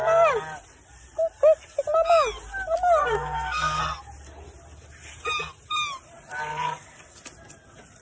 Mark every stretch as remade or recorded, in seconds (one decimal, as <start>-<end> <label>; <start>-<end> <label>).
0.0-3.0 recorded; 3.0-3.8 remade; 3.8-8.0 recorded